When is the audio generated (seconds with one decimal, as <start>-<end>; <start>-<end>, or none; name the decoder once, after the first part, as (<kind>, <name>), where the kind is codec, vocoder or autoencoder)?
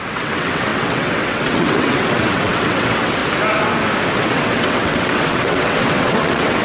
0.0-3.2 (vocoder, WaveNeXt); 4.1-6.6